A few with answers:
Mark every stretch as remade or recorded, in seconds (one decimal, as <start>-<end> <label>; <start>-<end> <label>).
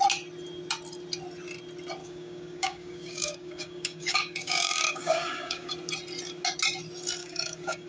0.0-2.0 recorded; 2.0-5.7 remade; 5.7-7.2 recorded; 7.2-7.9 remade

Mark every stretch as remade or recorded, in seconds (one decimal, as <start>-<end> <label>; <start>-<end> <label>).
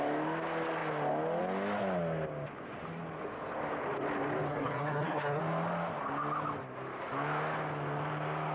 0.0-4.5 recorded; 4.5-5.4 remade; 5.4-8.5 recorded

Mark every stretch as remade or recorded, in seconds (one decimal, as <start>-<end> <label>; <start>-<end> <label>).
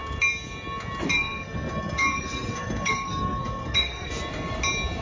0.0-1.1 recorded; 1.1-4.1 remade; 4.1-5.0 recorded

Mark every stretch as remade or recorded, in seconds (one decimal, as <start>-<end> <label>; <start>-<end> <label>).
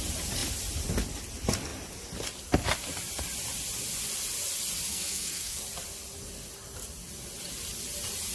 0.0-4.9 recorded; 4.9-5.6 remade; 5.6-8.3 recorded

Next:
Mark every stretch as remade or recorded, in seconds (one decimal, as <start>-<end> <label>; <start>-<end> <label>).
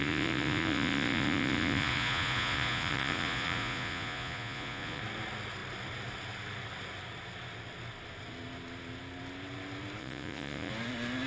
0.0-5.0 remade; 5.0-10.0 recorded; 10.0-10.7 remade; 10.7-11.3 recorded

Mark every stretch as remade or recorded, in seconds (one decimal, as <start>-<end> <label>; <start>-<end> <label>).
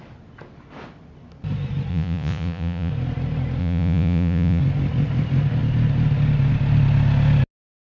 0.0-1.9 recorded; 1.9-2.9 remade; 2.9-3.6 recorded; 3.6-4.6 remade; 4.6-8.0 recorded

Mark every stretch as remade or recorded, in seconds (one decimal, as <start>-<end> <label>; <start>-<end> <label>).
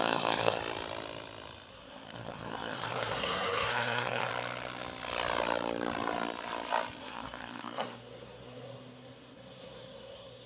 0.0-0.6 remade; 0.6-1.7 recorded; 1.7-4.3 remade; 4.3-7.0 recorded; 7.0-10.5 remade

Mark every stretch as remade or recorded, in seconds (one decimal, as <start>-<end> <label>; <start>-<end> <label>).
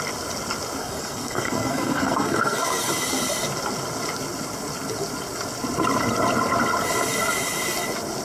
0.0-0.8 recorded; 0.8-2.9 remade; 2.9-8.2 recorded